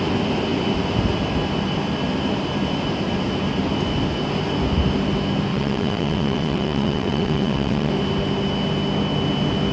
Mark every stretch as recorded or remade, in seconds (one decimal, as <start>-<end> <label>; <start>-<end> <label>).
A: 0.0-5.5 recorded; 5.5-7.9 remade; 7.9-9.7 recorded

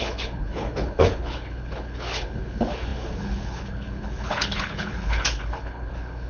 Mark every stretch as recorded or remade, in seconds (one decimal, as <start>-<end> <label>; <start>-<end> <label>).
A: 0.0-6.3 remade